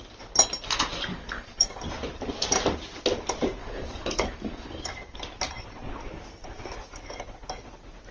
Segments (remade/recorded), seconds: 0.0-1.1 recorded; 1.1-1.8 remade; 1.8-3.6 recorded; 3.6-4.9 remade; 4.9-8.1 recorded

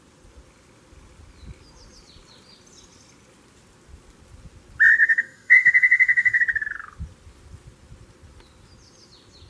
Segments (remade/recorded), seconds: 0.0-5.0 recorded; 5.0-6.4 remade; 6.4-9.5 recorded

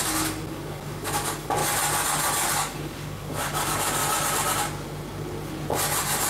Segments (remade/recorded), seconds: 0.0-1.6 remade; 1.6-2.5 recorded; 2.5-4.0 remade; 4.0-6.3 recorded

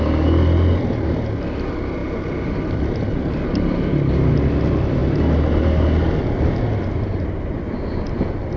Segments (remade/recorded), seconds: 0.0-8.6 recorded

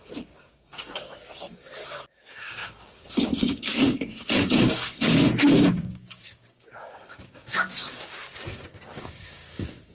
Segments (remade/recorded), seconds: 0.0-9.9 remade

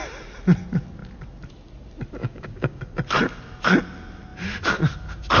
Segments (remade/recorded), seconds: 0.0-2.2 recorded; 2.2-2.8 remade; 2.8-5.4 recorded

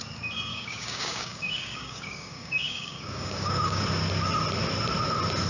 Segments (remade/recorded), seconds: 0.0-0.5 recorded; 0.5-3.8 remade; 3.8-5.5 recorded